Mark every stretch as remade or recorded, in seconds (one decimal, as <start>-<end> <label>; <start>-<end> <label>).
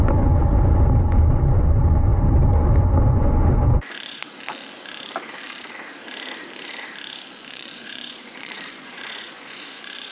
0.0-0.4 remade; 0.4-1.4 recorded; 1.4-2.1 remade; 2.1-3.1 recorded; 3.1-4.2 remade; 4.2-7.3 recorded; 7.3-10.1 remade